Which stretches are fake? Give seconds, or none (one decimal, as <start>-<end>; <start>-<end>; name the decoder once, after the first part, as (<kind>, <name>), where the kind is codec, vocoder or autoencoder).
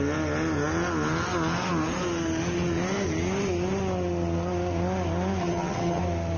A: 5.4-6.0 (vocoder, HiFi-GAN)